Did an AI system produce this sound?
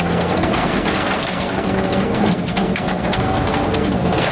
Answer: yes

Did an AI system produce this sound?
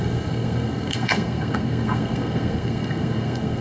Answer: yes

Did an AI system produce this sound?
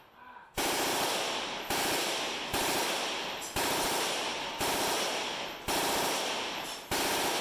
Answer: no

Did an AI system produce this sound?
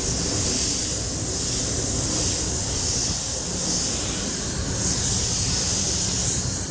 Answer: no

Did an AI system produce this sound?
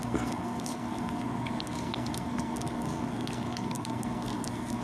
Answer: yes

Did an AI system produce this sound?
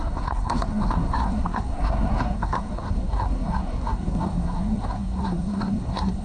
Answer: yes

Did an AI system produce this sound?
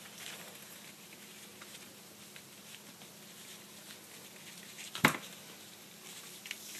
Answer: no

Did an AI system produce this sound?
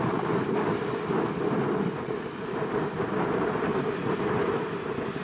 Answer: no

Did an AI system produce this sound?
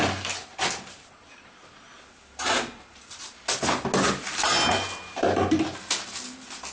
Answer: no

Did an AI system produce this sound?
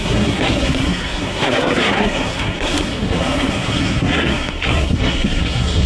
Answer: yes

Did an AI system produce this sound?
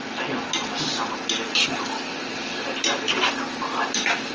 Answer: no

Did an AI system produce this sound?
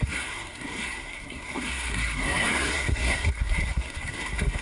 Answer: yes